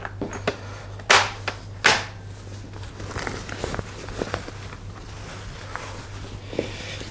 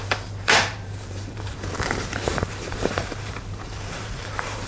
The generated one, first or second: second